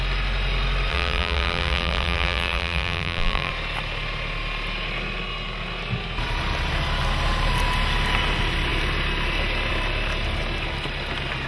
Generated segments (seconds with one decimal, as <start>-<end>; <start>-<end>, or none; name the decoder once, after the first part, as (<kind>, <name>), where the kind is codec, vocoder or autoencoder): 0.9-3.5 (vocoder, BigVGAN v2)